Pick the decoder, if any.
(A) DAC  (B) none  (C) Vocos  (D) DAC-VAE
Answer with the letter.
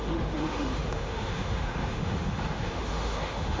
D